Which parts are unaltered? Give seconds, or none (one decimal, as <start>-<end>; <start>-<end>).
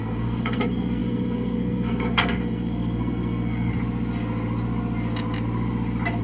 3.7-6.2